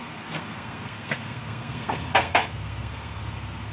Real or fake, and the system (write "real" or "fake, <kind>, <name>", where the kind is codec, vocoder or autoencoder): fake, codec, SNAC